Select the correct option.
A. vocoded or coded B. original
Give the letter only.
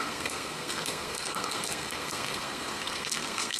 A